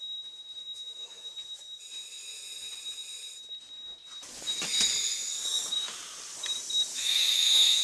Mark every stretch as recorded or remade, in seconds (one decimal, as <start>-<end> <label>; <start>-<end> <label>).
0.0-0.6 recorded; 0.6-1.3 remade; 1.3-6.9 recorded; 6.9-7.8 remade